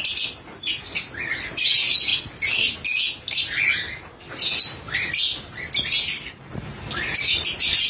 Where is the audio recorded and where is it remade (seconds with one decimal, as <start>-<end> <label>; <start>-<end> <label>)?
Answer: 0.0-7.9 recorded